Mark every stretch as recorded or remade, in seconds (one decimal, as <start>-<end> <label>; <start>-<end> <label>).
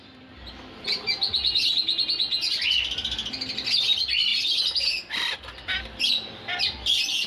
0.0-7.3 recorded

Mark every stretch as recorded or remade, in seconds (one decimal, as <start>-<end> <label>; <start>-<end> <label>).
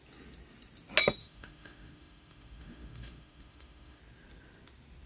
0.0-1.2 recorded; 1.2-4.0 remade; 4.0-5.1 recorded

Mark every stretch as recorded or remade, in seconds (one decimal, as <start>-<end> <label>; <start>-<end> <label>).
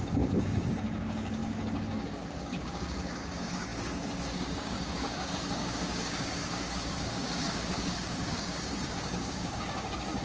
0.0-10.2 remade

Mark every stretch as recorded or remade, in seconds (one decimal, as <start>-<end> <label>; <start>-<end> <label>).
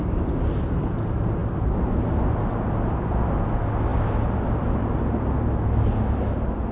0.0-6.7 recorded